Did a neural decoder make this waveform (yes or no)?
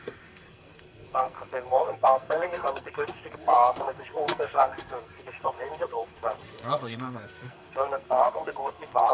yes